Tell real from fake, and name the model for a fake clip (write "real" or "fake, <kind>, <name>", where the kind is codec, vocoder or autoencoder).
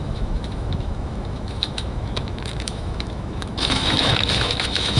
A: fake, autoencoder, DAC-VAE